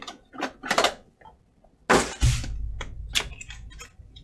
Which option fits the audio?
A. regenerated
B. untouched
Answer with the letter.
B